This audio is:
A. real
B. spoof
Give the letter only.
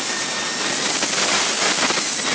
A